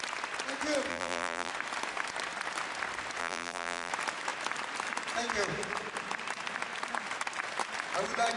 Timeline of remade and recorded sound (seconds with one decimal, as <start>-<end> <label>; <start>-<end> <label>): 0.0-0.9 recorded; 0.9-1.5 remade; 1.5-3.2 recorded; 3.2-3.9 remade; 3.9-8.4 recorded